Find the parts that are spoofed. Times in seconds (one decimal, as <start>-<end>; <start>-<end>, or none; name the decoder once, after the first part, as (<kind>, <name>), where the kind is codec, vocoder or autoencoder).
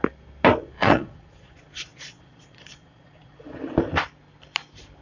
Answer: 0.6-3.6 (vocoder, Vocos)